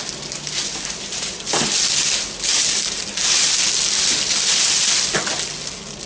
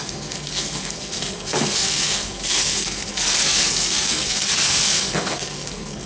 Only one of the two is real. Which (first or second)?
first